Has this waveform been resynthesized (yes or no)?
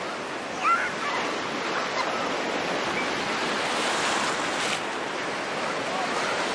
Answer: no